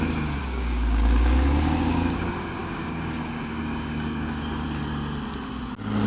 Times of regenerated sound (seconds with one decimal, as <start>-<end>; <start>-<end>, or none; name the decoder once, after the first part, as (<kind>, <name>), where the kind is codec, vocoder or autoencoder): 0.4-2.2 (codec, DAC); 2.6-4.3